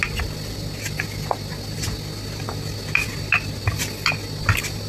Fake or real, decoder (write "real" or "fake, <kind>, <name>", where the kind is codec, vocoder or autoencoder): real